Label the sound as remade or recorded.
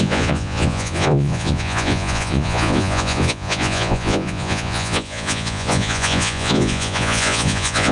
remade